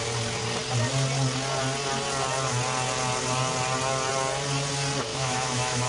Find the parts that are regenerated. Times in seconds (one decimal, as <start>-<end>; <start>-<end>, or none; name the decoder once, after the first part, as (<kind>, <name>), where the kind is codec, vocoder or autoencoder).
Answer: 5.1-5.9 (autoencoder, DAC-VAE)